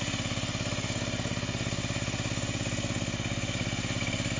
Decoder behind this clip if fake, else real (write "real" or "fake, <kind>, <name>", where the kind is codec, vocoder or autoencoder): real